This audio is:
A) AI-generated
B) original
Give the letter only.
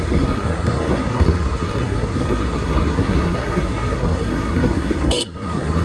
A